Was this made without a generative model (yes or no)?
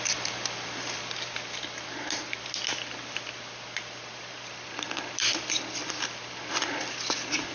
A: yes